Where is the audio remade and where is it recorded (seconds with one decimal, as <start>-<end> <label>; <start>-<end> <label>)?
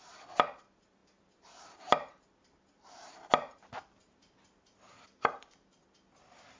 0.0-6.6 recorded